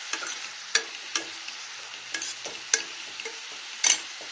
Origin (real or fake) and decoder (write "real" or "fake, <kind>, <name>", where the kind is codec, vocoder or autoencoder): real